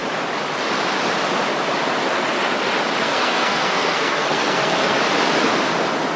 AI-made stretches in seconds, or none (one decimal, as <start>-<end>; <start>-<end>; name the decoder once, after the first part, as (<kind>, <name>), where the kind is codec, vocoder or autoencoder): 3.0-5.0 (codec, SNAC)